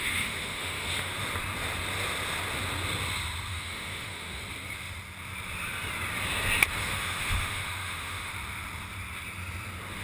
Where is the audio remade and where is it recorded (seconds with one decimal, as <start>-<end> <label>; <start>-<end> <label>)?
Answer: 0.0-1.1 remade; 1.1-3.5 recorded; 3.5-4.4 remade; 4.4-6.8 recorded; 6.8-8.3 remade; 8.3-10.0 recorded

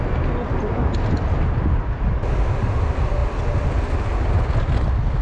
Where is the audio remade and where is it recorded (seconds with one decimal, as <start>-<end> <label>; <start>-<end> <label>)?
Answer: 0.0-5.2 recorded

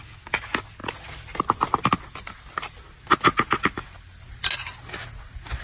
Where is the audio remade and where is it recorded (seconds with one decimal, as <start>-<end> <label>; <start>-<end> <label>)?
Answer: 0.0-5.6 recorded

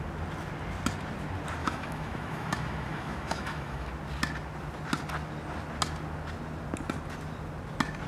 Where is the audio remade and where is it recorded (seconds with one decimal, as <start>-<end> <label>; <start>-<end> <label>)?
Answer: 0.0-1.6 recorded; 1.6-3.9 remade; 3.9-8.1 recorded

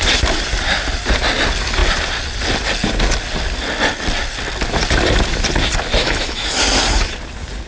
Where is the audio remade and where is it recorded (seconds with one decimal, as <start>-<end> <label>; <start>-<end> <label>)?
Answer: 0.0-6.0 recorded; 6.0-6.6 remade; 6.6-7.7 recorded